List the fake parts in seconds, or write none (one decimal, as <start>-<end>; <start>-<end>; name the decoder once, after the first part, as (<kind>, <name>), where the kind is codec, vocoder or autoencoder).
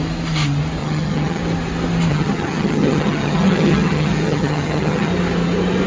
0.8-1.4 (vocoder, HiFi-GAN); 2.1-5.1